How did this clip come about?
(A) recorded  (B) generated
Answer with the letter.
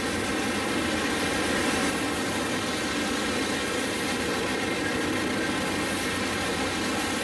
A